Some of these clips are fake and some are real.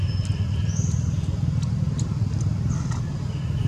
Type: real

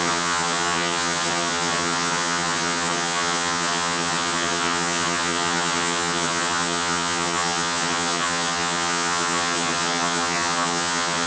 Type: fake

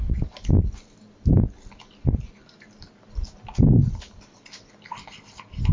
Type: real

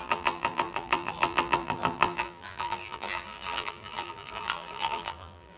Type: fake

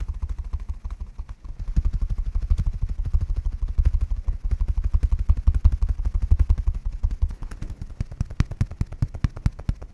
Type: real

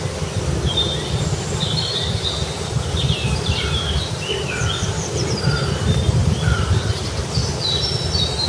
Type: fake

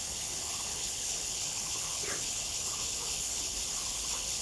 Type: fake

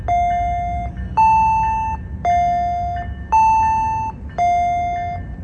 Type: real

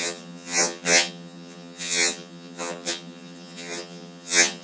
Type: fake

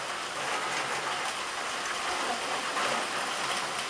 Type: real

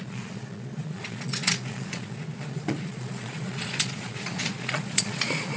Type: fake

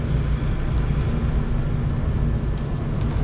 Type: real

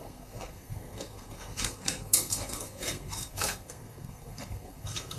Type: fake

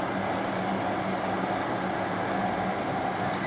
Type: real